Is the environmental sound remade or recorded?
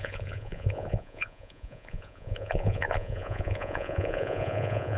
remade